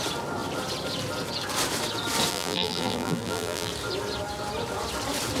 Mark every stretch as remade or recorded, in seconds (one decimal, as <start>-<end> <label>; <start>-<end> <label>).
0.0-2.3 recorded; 2.3-3.7 remade; 3.7-5.4 recorded